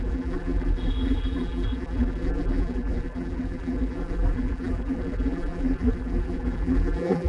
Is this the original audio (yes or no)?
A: no